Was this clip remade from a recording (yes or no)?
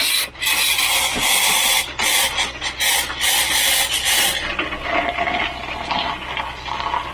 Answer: no